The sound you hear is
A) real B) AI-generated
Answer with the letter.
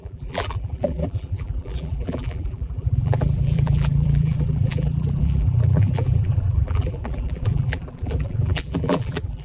B